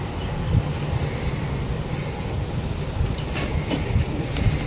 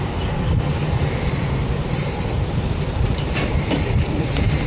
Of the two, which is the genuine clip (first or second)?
first